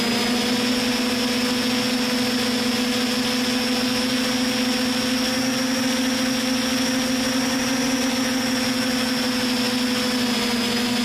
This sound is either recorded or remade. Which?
recorded